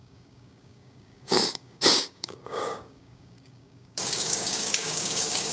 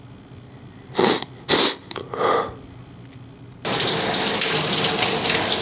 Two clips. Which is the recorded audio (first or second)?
second